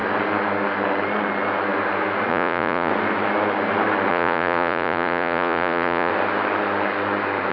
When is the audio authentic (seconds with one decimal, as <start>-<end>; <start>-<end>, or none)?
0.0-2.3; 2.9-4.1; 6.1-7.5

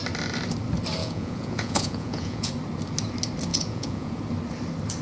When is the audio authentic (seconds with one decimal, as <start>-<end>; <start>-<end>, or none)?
0.0-1.0; 2.5-3.5; 4.1-5.0

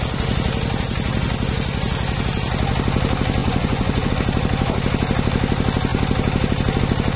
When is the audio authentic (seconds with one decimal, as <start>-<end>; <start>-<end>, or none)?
0.0-3.4; 4.1-7.2

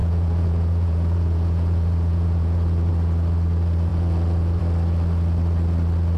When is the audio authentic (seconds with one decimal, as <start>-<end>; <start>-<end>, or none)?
2.9-3.9; 4.6-6.2

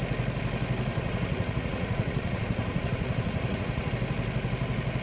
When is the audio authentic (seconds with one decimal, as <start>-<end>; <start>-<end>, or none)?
0.0-0.9; 3.9-5.0

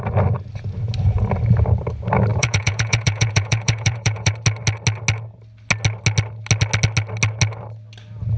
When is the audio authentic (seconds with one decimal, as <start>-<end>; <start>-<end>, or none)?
0.0-2.3; 4.3-8.4

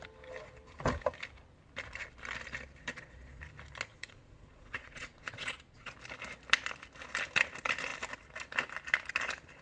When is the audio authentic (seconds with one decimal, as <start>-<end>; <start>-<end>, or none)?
0.0-2.8; 3.4-3.9; 5.9-9.6